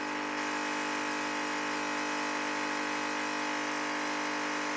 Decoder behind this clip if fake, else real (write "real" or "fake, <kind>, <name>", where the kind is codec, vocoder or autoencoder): real